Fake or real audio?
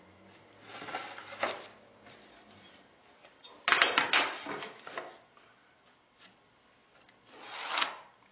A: real